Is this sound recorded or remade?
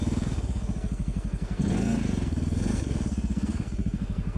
remade